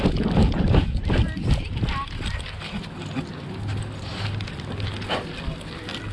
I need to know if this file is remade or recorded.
recorded